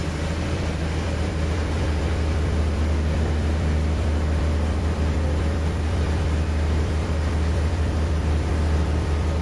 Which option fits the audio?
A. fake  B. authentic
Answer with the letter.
A